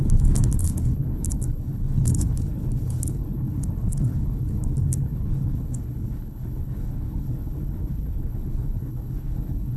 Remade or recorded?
remade